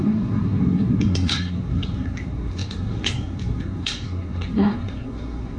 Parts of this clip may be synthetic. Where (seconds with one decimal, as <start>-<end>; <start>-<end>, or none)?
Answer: 0.0-5.6